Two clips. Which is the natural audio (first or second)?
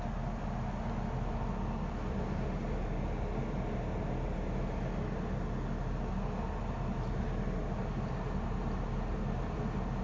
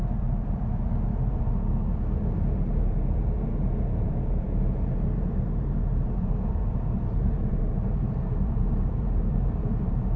first